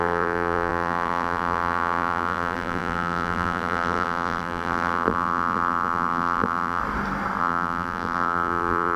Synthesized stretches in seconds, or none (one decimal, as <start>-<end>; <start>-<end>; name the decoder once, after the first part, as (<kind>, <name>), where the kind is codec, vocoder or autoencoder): 0.0-6.8 (vocoder, BigVGAN v2); 7.4-9.0